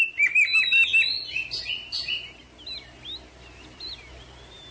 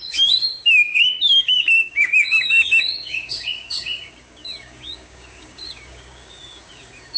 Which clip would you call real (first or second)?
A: first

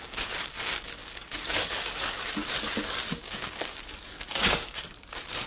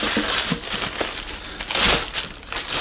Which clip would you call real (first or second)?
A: second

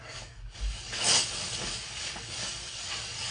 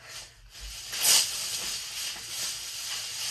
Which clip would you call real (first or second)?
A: second